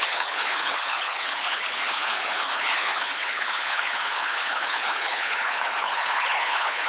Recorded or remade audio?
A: remade